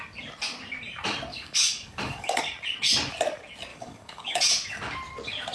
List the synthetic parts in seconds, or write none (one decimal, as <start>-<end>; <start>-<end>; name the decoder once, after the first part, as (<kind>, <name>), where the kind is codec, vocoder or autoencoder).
1.3-2.4 (codec, DAC); 3.7-4.4